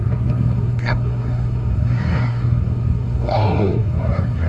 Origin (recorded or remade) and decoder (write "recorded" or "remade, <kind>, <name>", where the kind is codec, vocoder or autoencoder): remade, codec, SNAC